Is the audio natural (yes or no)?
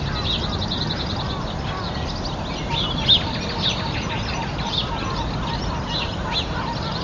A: yes